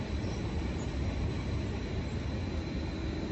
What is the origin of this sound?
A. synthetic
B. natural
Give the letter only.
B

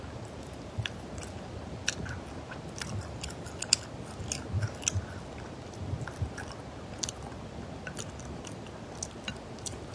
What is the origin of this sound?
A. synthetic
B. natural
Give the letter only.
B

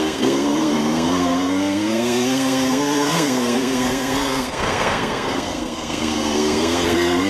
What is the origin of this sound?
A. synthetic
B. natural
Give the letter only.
A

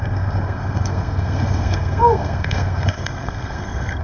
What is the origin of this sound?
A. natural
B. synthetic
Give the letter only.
B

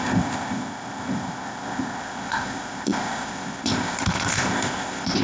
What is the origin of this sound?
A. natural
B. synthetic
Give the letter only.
B